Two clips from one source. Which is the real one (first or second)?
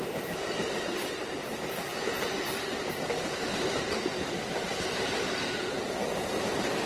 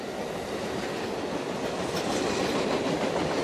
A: second